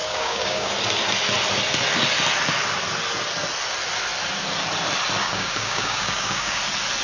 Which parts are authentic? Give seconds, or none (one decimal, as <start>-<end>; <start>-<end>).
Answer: 0.7-5.2; 6.6-7.0

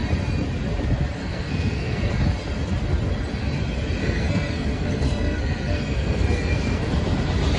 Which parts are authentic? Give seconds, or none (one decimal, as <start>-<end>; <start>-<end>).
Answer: 0.0-1.2; 2.1-4.0; 6.9-7.6